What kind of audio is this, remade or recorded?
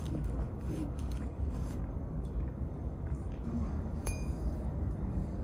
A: remade